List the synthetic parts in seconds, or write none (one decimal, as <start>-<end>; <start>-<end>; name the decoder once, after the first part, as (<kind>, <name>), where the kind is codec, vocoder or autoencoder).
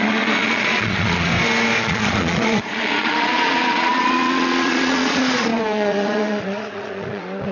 0.0-1.3 (vocoder, Vocos); 1.8-7.5